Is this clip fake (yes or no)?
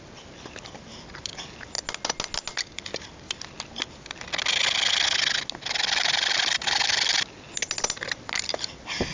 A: no